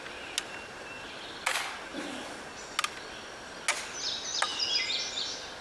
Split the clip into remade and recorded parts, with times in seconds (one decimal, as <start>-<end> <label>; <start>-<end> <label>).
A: 0.0-5.6 recorded